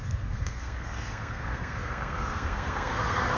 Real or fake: fake